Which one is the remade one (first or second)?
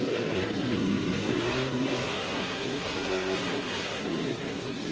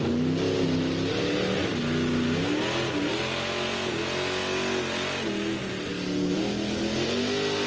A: first